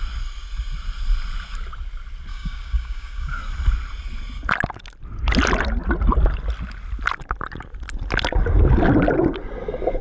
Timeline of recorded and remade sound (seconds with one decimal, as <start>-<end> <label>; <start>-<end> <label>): 0.0-2.3 recorded; 2.3-3.4 remade; 3.4-10.0 recorded